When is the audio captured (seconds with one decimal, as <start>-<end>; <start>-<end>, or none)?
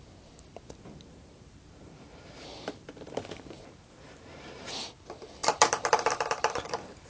0.0-1.1; 4.9-5.4